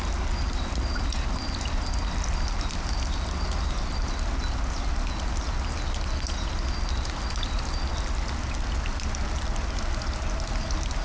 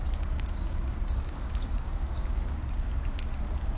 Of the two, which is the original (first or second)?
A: first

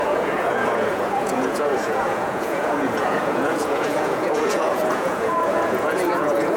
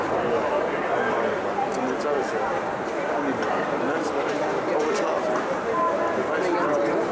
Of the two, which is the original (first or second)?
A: second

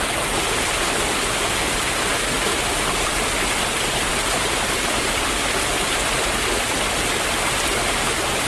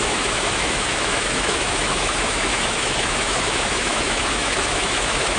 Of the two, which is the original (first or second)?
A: first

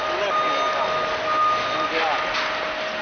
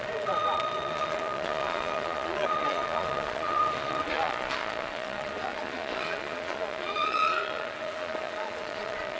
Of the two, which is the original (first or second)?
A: first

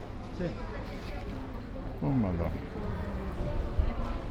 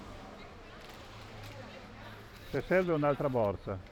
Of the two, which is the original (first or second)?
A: first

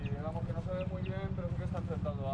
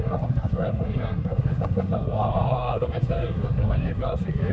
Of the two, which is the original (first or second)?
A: first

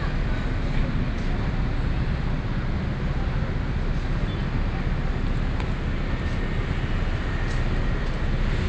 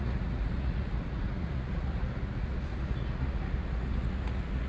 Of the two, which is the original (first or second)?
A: first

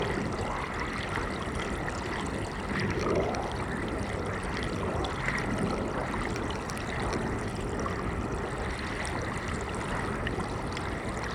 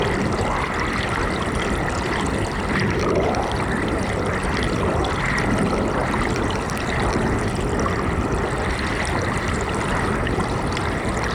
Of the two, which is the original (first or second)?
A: first